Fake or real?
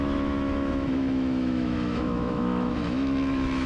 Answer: fake